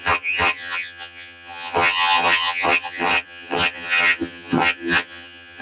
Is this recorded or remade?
remade